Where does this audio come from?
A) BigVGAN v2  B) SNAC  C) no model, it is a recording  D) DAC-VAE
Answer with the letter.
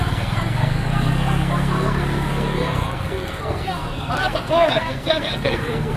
B